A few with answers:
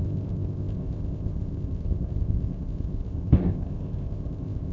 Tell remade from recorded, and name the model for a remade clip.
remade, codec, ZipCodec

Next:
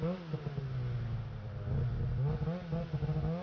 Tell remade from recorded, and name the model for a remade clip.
recorded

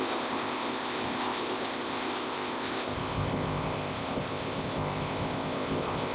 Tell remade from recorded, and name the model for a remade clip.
remade, codec, ZipCodec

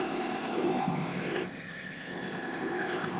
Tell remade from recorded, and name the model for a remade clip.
remade, codec, ZipCodec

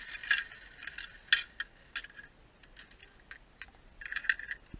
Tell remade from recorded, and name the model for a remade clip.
recorded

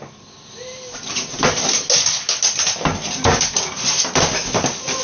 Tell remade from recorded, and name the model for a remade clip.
recorded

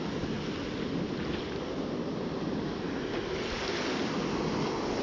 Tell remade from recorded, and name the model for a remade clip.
recorded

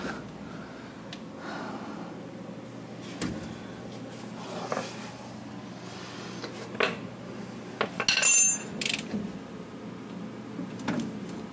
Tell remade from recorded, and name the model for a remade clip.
recorded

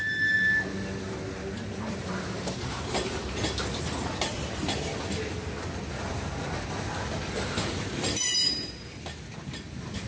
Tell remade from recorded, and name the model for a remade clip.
recorded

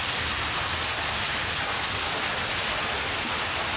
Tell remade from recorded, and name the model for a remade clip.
recorded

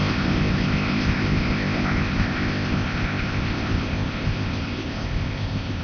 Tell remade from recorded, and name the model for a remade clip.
remade, codec, ZipCodec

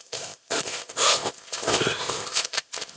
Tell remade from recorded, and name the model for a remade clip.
remade, codec, ZipCodec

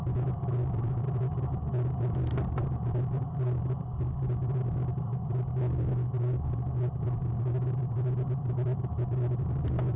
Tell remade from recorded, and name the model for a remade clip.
recorded